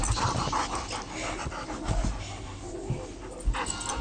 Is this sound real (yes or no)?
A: yes